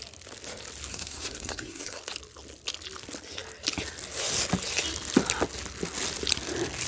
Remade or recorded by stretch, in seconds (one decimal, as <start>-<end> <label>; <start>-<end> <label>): 0.0-0.9 recorded; 0.9-2.0 remade; 2.0-6.9 recorded